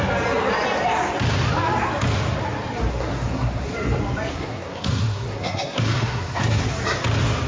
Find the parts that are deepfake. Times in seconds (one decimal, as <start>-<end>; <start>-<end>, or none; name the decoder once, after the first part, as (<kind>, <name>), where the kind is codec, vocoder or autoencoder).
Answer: 2.9-3.7 (codec, SNAC); 4.3-6.6